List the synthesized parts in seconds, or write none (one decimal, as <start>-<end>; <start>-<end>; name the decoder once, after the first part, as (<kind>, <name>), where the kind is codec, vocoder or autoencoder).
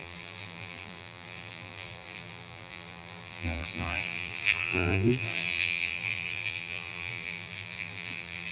0.0-8.5 (vocoder, BigVGAN v2)